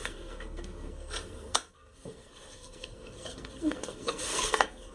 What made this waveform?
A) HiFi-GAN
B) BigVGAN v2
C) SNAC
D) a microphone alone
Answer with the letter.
C